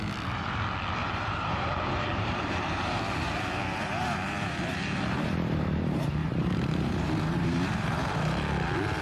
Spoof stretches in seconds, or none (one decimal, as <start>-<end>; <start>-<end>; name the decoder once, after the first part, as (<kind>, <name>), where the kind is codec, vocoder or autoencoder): 1.0-5.8 (vocoder, BigVGAN v2); 6.2-8.4